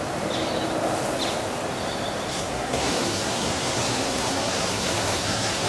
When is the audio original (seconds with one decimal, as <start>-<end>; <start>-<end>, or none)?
0.0-2.3